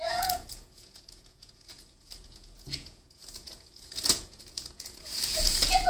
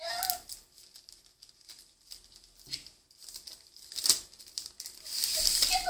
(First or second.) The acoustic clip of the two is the second